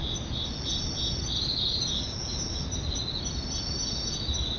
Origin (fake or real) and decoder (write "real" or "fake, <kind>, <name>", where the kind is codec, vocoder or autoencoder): real